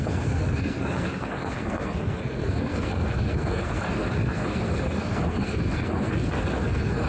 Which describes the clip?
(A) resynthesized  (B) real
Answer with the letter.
A